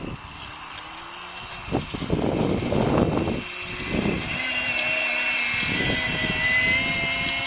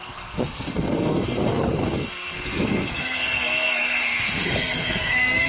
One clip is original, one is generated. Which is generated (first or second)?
second